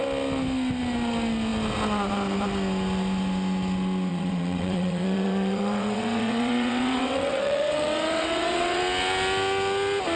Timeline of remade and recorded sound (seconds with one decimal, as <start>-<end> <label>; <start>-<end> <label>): 0.0-4.1 recorded; 4.1-8.8 remade; 8.8-10.2 recorded

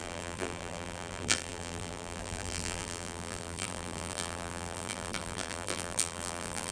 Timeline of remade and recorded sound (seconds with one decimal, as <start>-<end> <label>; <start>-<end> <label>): 0.0-6.7 remade

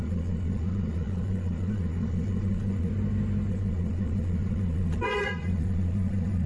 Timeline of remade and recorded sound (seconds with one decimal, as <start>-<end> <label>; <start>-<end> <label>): 0.0-2.9 remade; 2.9-3.5 recorded; 3.5-6.5 remade

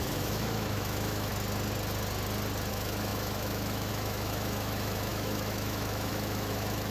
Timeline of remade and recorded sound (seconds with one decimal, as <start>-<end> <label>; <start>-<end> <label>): 0.0-1.3 remade; 1.3-2.7 recorded; 2.7-6.9 remade